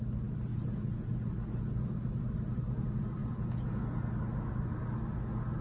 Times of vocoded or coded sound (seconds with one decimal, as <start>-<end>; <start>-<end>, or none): 0.5-2.0; 3.2-4.1